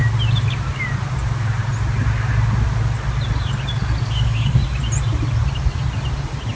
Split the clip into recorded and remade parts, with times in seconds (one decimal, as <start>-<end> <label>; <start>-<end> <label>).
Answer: 0.0-4.0 recorded; 4.0-4.6 remade; 4.6-6.6 recorded